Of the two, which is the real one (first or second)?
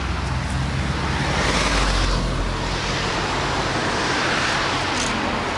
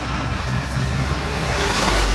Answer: first